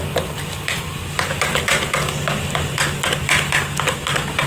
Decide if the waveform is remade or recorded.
recorded